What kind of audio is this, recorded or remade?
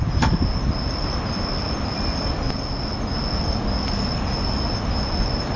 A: recorded